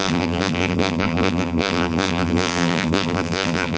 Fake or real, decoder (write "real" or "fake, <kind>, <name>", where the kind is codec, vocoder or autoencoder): fake, vocoder, BigVGAN v2